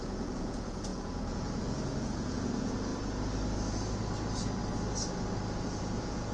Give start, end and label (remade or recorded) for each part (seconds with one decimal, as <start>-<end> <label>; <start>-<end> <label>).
0.0-2.9 remade; 2.9-5.8 recorded; 5.8-6.3 remade